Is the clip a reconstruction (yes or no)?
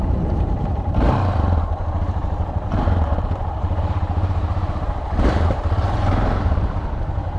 yes